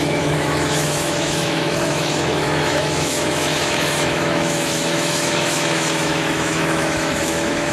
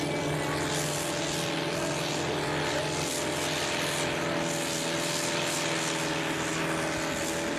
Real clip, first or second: second